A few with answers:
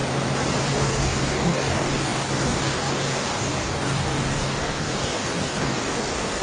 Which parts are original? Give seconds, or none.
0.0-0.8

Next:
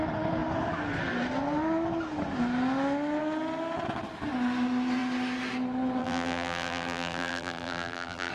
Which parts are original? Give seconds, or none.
0.0-6.0

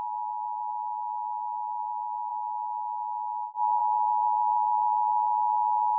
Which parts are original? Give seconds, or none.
0.0-6.0

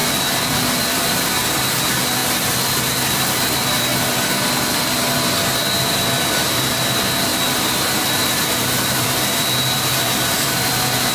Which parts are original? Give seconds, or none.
0.0-0.8; 2.2-3.1; 3.9-5.8; 7.3-8.3